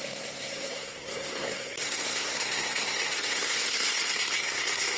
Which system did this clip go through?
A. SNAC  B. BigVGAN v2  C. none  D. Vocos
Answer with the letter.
A